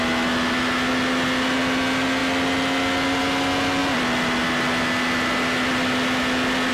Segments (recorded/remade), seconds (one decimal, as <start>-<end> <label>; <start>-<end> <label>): 0.0-6.7 recorded